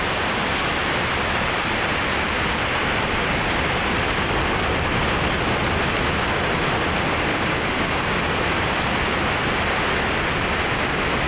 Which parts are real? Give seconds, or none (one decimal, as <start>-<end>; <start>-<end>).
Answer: 0.0-7.3; 8.2-11.3